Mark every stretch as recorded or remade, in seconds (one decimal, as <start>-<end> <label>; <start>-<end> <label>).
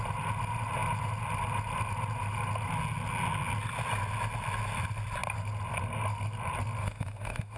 0.0-6.8 recorded; 6.8-7.6 remade